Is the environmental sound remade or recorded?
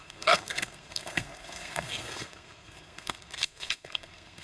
remade